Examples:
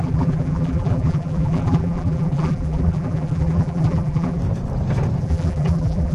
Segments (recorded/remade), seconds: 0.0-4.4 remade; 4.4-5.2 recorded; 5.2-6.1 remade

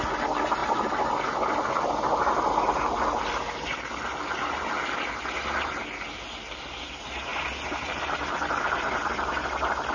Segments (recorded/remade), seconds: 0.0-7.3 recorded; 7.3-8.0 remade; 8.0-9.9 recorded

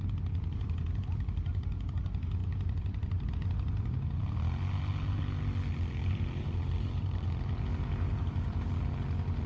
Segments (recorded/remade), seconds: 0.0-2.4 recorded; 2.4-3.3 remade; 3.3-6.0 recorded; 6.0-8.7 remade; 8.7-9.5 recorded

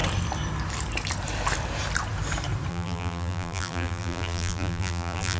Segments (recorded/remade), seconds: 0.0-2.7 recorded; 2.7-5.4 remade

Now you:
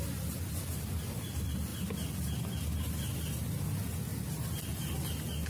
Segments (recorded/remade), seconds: 0.0-4.1 recorded; 4.1-4.8 remade; 4.8-5.5 recorded

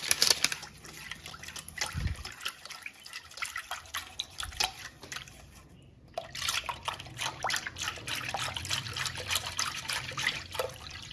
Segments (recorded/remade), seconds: 0.0-0.6 remade; 0.6-2.7 recorded; 2.7-11.1 remade

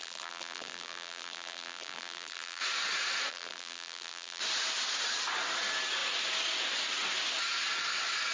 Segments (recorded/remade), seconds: 0.0-2.6 remade; 2.6-3.3 recorded; 3.3-4.4 remade; 4.4-8.3 recorded